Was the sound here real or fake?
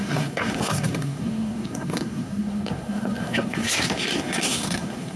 fake